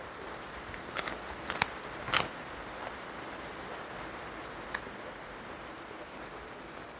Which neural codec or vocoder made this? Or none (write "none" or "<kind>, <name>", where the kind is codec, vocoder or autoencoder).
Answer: none